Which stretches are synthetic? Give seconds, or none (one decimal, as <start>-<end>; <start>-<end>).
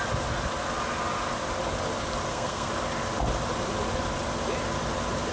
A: 2.3-2.7